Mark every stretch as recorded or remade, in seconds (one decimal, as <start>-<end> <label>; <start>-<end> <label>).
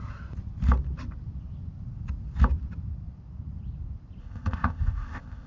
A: 0.0-4.2 recorded; 4.2-5.5 remade